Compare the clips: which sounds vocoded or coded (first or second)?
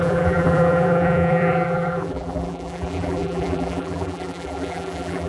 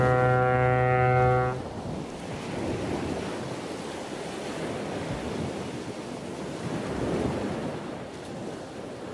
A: first